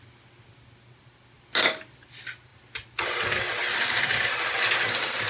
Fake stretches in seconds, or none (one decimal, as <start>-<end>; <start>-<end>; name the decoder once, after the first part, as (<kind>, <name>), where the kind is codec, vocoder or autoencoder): none